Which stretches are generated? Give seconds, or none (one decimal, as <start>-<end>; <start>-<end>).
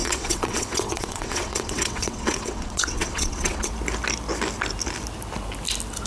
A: 0.0-3.7